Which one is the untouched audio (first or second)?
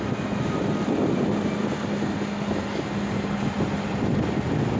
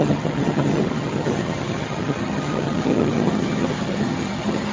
first